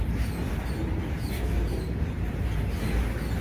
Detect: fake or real real